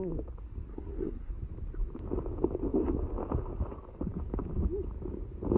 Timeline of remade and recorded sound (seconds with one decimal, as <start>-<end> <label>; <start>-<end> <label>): 0.0-0.7 recorded; 0.7-1.3 remade; 1.3-5.6 recorded